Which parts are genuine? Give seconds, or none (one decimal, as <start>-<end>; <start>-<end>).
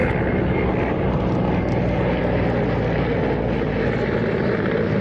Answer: 0.0-5.0